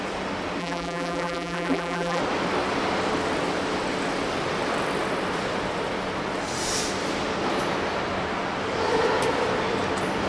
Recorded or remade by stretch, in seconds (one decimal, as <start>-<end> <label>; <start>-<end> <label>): 0.0-0.6 recorded; 0.6-2.2 remade; 2.2-10.3 recorded